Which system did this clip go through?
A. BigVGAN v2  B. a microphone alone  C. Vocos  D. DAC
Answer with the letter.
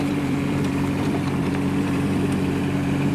A